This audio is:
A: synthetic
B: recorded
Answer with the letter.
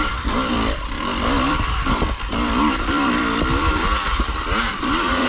A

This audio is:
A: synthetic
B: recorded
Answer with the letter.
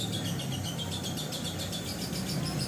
B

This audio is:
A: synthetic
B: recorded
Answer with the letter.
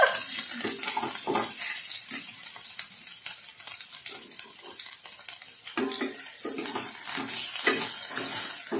B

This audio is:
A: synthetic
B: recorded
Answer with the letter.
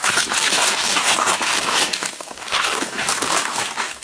A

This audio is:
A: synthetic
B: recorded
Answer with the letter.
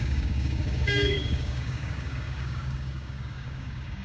A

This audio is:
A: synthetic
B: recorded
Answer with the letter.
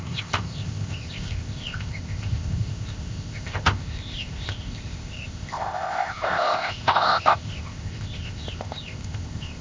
A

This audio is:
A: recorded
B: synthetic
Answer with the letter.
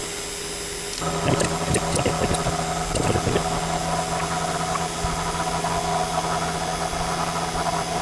A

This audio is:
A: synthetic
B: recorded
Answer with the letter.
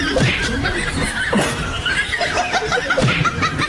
B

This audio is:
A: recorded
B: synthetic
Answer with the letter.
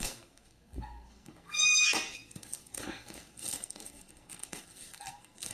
B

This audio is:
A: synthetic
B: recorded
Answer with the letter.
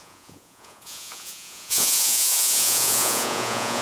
A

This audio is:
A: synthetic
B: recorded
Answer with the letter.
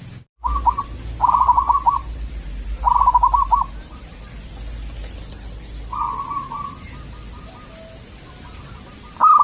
B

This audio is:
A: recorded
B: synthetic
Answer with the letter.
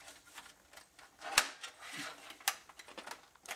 A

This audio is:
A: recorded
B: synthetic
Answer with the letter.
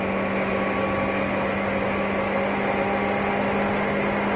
A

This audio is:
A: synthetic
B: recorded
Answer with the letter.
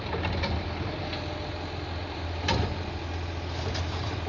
B